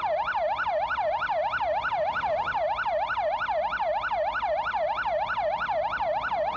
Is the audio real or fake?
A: real